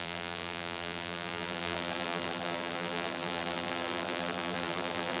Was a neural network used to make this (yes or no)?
yes